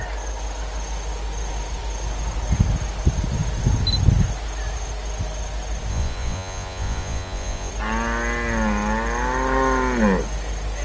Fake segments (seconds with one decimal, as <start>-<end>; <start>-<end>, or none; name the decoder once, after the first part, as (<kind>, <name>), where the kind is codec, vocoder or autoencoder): 5.9-7.7 (vocoder, Vocos)